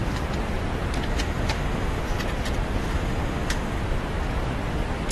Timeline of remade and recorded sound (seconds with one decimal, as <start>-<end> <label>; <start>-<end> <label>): 0.0-1.1 recorded; 1.1-2.0 remade; 2.0-2.8 recorded; 2.8-3.8 remade; 3.8-5.1 recorded